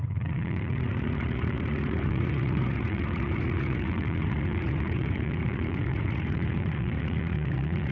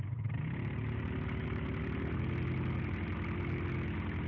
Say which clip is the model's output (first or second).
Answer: first